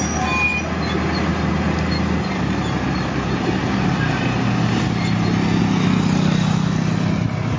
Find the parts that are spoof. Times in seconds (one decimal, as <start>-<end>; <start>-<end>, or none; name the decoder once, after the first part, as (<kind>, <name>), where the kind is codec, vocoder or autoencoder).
none